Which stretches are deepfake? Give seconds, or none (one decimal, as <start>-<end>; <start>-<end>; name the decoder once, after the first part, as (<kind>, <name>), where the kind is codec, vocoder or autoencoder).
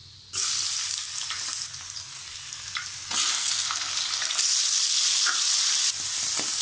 3.4-3.9 (codec, SNAC)